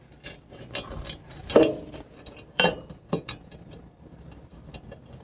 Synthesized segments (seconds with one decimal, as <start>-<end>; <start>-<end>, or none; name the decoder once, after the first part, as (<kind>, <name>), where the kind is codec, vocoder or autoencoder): 1.4-4.5 (vocoder, BigVGAN v2)